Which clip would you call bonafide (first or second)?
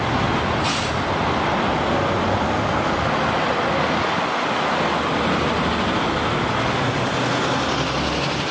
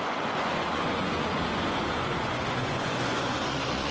first